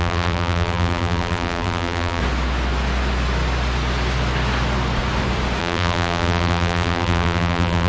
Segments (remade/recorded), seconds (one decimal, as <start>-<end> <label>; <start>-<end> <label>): 0.0-2.2 remade; 2.2-5.6 recorded; 5.6-7.9 remade